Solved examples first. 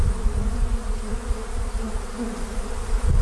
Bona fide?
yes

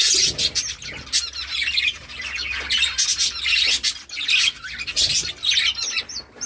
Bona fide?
yes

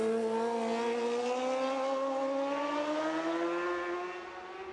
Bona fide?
yes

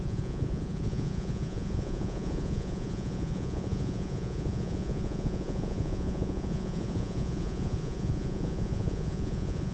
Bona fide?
no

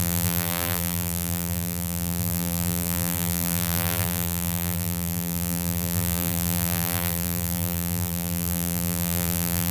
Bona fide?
no